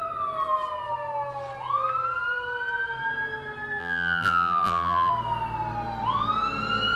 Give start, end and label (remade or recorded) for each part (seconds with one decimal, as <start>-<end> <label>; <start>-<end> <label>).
0.0-3.8 recorded; 3.8-5.1 remade; 5.1-7.0 recorded